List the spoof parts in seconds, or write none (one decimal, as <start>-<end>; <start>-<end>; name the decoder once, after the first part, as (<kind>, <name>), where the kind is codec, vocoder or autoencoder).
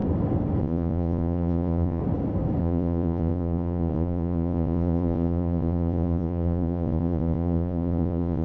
0.6-2.0 (vocoder, Vocos); 2.6-8.4